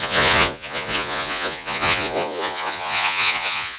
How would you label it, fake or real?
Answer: fake